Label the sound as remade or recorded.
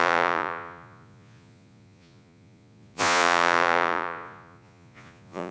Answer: remade